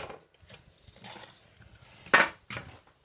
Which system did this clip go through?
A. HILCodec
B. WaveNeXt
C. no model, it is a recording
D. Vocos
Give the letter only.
C